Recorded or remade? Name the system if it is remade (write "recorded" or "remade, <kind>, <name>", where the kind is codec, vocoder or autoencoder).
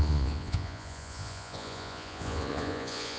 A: remade, vocoder, Vocos